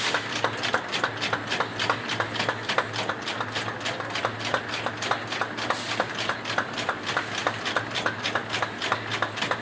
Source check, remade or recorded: recorded